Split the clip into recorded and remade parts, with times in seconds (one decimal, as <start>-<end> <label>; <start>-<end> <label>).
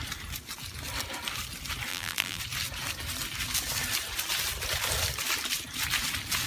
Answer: 0.0-1.9 recorded; 1.9-2.4 remade; 2.4-6.5 recorded